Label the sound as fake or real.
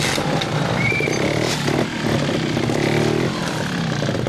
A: real